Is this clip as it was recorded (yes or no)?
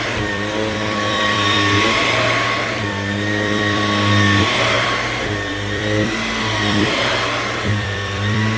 no